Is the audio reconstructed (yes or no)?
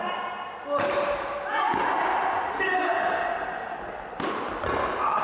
no